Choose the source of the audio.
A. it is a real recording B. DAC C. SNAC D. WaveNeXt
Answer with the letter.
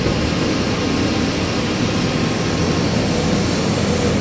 A